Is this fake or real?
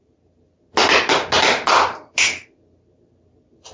real